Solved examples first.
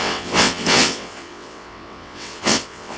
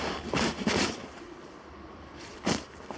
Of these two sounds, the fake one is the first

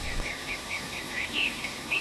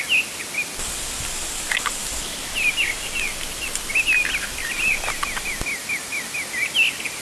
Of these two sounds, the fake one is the first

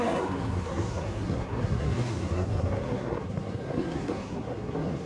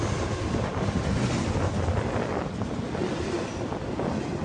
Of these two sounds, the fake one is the first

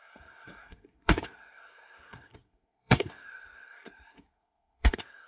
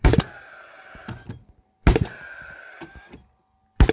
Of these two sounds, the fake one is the first